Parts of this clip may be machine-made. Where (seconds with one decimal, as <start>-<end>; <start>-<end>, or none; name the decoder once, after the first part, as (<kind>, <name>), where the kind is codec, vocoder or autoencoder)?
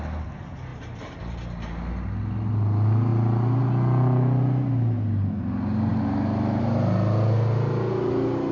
none